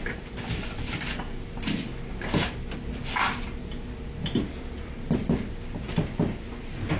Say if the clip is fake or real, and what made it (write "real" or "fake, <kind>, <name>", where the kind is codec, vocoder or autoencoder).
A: real